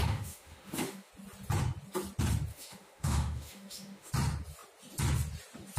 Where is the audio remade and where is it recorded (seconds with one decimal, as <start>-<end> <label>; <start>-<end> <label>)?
0.0-1.1 remade; 1.1-2.5 recorded; 2.5-4.1 remade; 4.1-5.8 recorded